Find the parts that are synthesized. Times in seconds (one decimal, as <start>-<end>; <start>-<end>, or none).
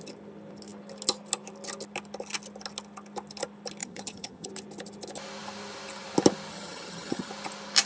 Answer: 3.8-4.5; 6.5-7.3